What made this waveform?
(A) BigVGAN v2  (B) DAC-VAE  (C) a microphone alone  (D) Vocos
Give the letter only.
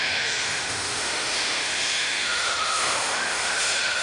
B